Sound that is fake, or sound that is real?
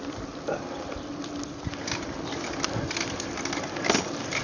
real